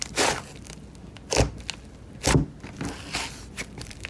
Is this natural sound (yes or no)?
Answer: yes